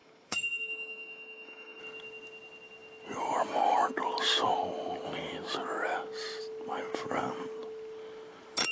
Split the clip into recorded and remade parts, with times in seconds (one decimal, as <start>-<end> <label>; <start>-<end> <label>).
0.0-1.8 remade; 1.8-8.7 recorded